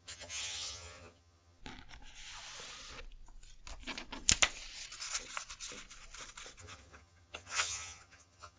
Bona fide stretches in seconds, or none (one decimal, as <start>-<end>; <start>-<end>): 1.6-6.6